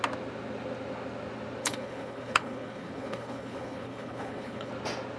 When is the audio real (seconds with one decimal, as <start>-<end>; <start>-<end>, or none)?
0.0-1.6; 4.7-5.2